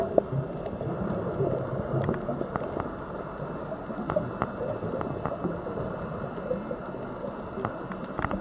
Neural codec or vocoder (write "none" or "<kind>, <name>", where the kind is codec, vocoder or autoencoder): none